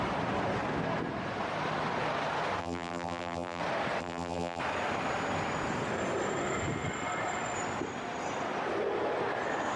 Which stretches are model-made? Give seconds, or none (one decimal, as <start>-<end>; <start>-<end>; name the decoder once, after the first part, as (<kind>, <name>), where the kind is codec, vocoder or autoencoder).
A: 2.6-3.6 (vocoder, BigVGAN v2); 4.0-4.6